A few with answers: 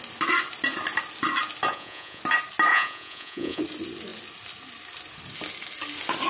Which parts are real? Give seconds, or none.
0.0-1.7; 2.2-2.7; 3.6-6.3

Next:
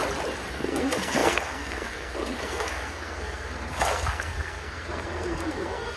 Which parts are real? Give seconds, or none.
0.0-0.5

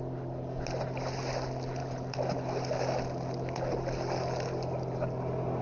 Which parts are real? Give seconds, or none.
0.0-5.6